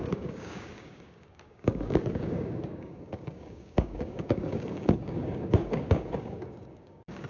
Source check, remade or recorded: remade